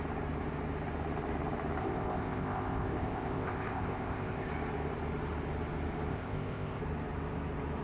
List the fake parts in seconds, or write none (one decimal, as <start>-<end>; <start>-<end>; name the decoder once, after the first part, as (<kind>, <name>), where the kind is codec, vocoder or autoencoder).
1.8-4.5 (codec, ZipCodec); 6.1-6.8